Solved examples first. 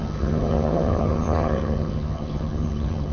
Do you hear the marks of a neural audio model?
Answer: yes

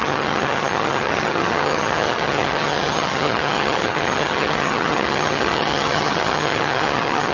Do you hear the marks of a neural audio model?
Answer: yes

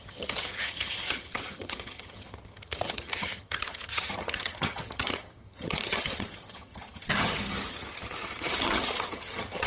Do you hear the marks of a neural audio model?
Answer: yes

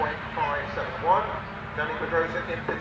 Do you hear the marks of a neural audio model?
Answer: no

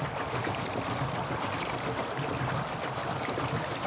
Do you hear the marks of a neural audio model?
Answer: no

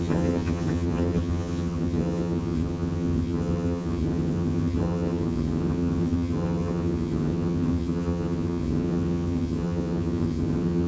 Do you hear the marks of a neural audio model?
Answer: yes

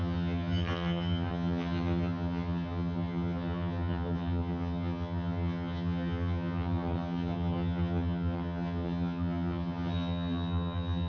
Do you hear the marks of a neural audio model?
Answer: yes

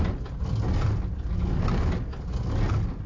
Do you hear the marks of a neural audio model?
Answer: no